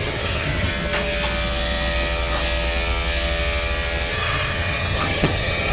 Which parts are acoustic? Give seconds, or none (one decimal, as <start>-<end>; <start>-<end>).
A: 0.7-4.1

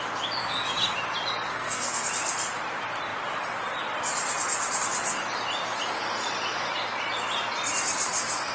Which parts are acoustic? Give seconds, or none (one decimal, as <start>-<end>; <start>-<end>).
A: 0.0-1.5; 2.1-8.5

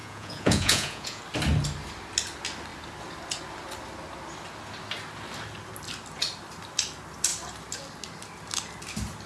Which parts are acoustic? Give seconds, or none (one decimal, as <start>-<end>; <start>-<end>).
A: 1.2-9.3

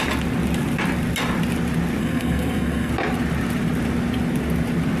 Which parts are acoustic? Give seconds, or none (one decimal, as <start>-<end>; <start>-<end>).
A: 0.0-2.0; 2.9-5.0